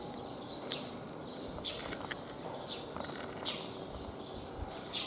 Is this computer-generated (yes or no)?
no